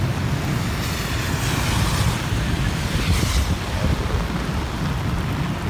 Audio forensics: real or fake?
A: real